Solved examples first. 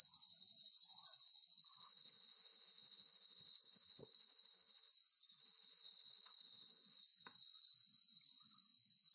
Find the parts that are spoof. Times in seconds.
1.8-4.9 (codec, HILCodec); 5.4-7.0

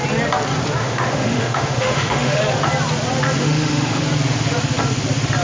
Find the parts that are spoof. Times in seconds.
0.8-2.4 (autoencoder, DAC-VAE); 3.4-4.0

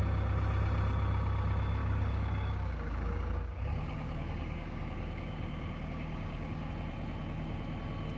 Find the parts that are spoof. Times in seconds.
1.8-6.7 (codec, DAC)

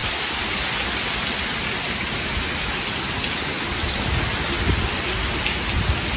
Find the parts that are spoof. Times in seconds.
none

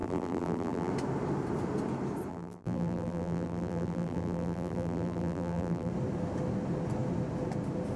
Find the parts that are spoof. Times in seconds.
0.0-0.9 (vocoder, BigVGAN v2); 2.3-5.9

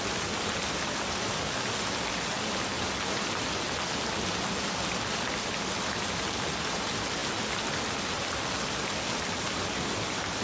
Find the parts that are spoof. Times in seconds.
none

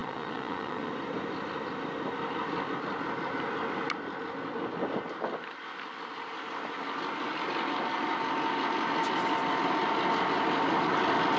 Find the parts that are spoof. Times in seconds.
0.0-0.9 (vocoder, Vocos)